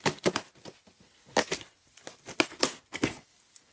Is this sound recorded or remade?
recorded